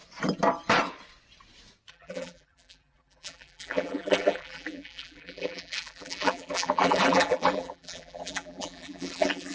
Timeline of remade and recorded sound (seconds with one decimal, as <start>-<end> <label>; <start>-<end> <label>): 0.0-1.9 recorded; 1.9-9.5 remade